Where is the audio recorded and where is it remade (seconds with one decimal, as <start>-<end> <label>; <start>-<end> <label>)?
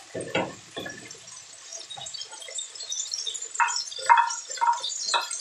0.0-5.4 recorded